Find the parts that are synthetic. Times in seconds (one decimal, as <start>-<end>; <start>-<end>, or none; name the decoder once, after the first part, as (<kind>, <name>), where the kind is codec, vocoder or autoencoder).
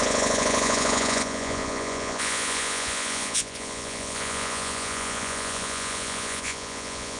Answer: 0.0-7.2 (vocoder, Vocos)